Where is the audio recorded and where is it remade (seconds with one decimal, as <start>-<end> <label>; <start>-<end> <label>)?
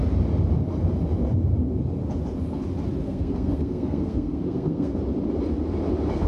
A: 0.0-3.0 recorded; 3.0-5.0 remade; 5.0-6.3 recorded